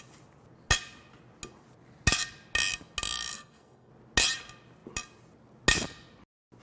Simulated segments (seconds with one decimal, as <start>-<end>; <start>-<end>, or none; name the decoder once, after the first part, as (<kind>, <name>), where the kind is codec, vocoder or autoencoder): 3.3-3.9 (codec, SNAC)